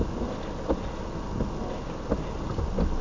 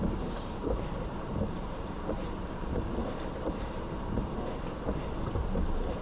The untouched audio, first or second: first